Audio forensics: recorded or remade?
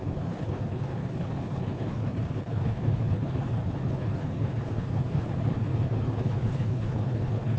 remade